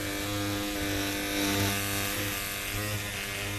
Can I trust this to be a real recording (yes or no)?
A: yes